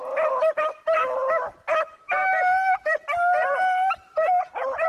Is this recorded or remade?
recorded